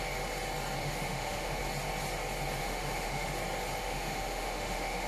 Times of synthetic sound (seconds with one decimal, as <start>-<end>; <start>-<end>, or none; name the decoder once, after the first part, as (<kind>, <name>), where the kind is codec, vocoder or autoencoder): 0.8-1.6 (autoencoder, DAC-VAE); 2.6-3.3; 3.8-5.1